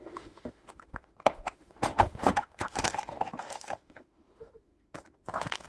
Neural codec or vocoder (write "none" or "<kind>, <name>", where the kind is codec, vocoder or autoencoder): autoencoder, DAC-VAE